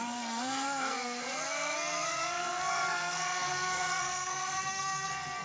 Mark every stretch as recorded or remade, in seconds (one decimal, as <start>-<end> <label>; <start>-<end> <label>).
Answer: 0.0-5.4 remade